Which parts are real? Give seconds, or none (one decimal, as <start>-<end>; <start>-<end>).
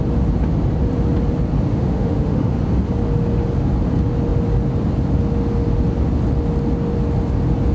0.0-1.7; 2.6-7.7